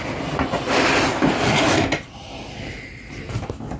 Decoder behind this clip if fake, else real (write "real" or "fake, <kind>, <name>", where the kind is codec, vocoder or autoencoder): real